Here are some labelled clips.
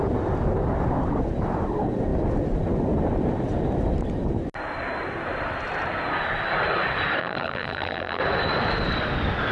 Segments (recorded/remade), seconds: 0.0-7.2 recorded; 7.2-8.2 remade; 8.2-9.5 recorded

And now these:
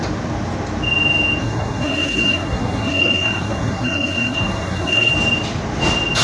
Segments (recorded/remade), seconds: 0.0-1.4 recorded; 1.4-5.1 remade; 5.1-6.2 recorded

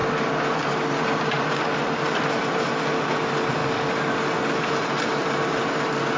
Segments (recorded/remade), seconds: 0.0-6.2 recorded

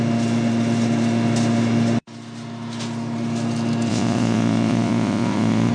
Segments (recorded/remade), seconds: 0.0-3.9 recorded; 3.9-5.7 remade

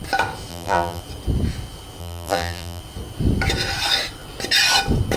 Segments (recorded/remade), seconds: 0.0-0.5 recorded; 0.5-1.0 remade; 1.0-2.0 recorded; 2.0-2.8 remade; 2.8-5.2 recorded